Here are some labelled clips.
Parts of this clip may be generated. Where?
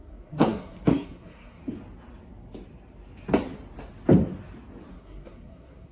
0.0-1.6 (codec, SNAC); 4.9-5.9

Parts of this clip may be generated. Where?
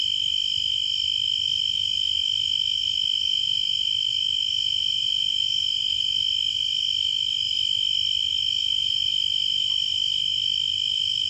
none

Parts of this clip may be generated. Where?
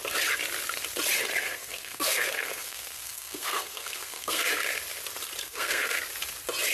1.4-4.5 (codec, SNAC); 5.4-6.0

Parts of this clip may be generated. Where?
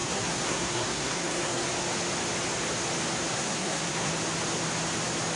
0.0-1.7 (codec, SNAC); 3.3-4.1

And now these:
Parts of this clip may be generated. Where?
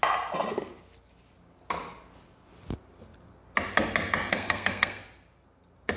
4.3-5.0 (codec, SNAC)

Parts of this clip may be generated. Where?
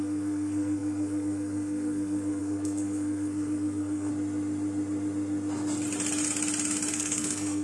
0.0-4.1 (codec, SNAC); 6.9-7.6